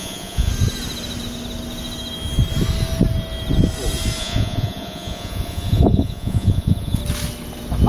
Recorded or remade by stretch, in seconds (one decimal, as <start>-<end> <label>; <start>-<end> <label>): 0.0-0.5 remade; 0.5-4.2 recorded; 4.2-7.0 remade; 7.0-7.9 recorded